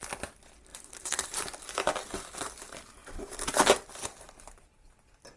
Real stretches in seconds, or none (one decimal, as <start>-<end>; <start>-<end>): 0.0-0.7; 1.9-3.0; 3.5-5.4